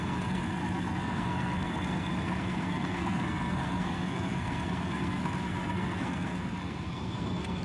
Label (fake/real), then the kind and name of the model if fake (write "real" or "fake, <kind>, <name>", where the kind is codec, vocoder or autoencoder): fake, codec, SNAC